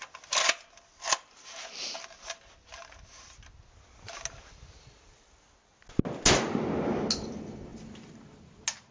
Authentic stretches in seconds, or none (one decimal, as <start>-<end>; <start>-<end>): 0.0-8.9